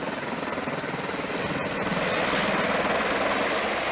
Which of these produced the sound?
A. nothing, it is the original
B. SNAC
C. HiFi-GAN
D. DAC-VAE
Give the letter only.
A